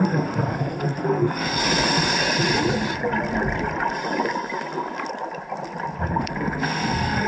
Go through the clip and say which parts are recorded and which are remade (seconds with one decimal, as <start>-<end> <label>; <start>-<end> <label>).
0.0-1.6 remade; 1.6-6.0 recorded; 6.0-7.3 remade